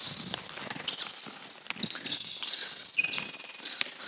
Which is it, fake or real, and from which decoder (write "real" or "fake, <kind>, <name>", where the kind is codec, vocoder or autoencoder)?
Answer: real